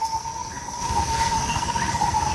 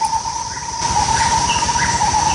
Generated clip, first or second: first